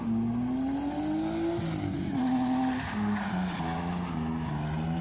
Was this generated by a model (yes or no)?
no